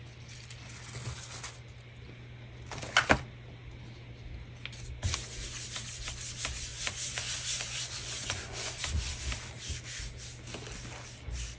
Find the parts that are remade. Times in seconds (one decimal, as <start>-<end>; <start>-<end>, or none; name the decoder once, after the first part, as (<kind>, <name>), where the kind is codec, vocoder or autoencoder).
6.7-8.8 (vocoder, Vocos)